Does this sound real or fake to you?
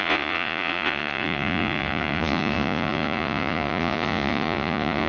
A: fake